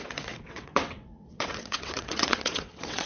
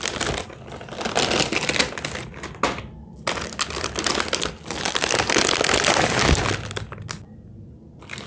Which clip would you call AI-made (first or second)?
first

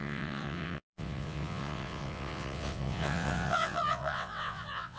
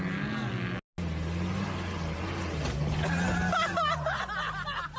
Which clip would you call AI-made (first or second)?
first